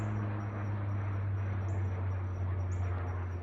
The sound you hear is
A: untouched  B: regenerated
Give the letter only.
A